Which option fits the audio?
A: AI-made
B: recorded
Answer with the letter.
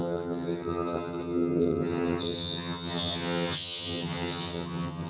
A